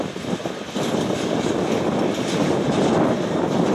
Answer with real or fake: real